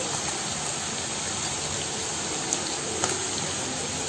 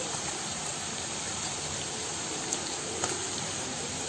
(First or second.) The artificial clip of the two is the second